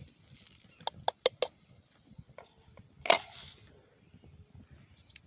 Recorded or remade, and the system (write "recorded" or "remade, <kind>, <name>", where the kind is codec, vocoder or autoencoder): recorded